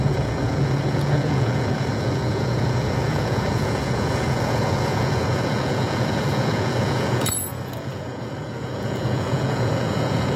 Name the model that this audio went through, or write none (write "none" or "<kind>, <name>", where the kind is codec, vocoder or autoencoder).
vocoder, Vocos